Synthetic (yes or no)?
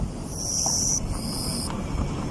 yes